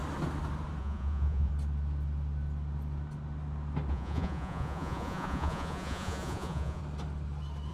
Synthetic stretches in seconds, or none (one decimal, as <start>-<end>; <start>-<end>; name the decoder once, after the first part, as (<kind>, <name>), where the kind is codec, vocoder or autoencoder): 0.8-1.5 (vocoder, Vocos); 3.9-6.8

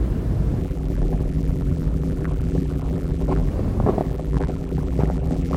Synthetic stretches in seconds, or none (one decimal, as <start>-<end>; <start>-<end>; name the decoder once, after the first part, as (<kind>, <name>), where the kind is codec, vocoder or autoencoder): 0.6-3.5 (vocoder, BigVGAN v2); 4.0-5.6

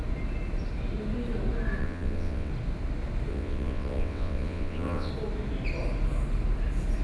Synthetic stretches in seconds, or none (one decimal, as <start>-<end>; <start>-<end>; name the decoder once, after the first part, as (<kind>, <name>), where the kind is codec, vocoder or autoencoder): 1.8-2.5 (vocoder, WaveNeXt); 3.3-5.1